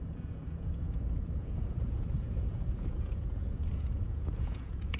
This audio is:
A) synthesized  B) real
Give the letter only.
A